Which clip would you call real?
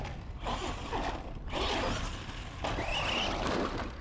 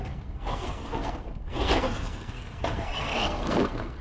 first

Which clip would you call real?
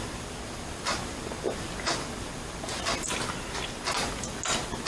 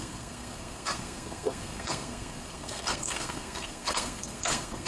first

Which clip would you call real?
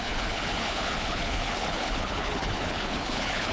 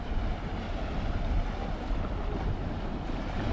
second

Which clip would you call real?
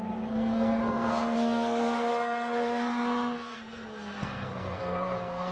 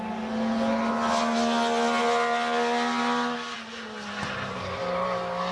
second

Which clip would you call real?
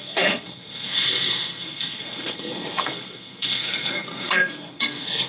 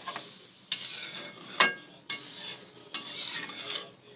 second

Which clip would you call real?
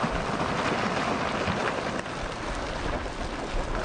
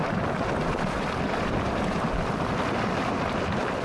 first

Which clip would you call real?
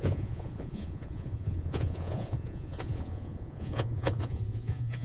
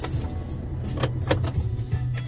second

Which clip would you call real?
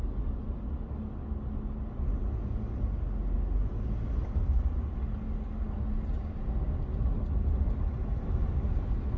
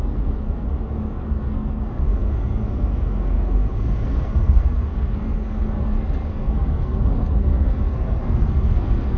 first